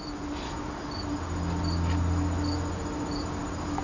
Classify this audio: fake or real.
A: real